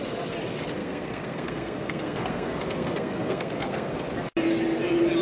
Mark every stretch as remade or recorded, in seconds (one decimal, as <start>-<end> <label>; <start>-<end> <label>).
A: 0.0-0.8 recorded; 0.8-3.9 remade; 3.9-5.2 recorded